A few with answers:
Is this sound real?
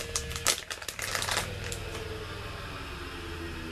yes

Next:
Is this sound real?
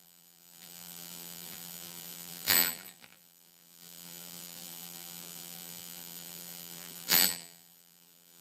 no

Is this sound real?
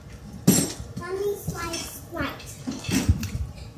yes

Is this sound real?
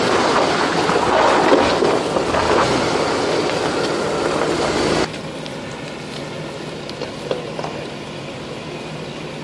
yes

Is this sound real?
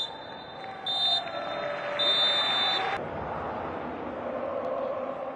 yes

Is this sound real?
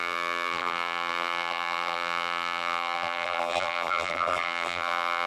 no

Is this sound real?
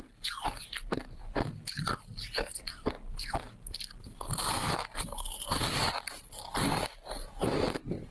yes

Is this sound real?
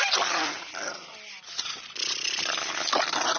yes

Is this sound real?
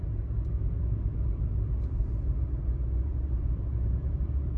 no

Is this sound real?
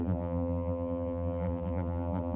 no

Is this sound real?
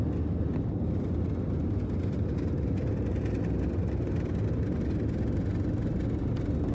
yes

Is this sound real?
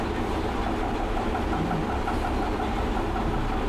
yes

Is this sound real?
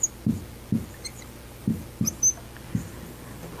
yes